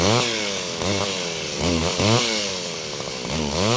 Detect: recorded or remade remade